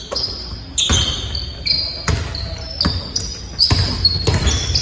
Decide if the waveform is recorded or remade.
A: recorded